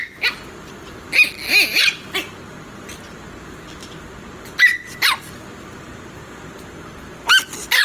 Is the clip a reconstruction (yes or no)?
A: no